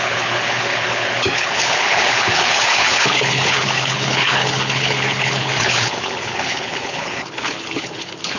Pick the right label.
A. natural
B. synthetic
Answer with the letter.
B